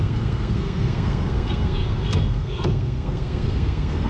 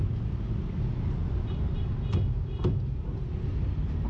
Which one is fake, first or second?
first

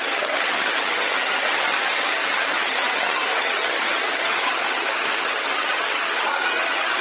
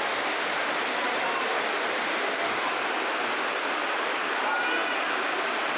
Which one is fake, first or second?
first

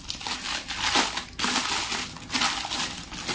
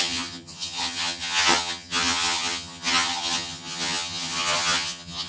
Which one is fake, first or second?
second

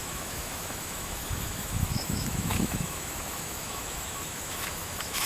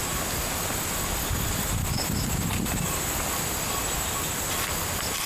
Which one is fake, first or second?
first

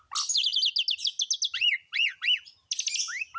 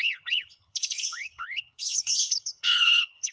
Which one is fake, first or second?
second